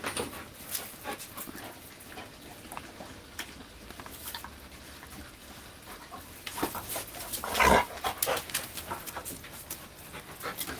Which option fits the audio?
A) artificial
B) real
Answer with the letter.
B